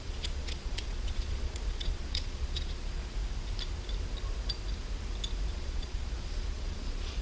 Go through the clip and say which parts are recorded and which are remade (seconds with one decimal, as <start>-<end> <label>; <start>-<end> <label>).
0.0-3.0 remade; 3.0-5.5 recorded; 5.5-7.2 remade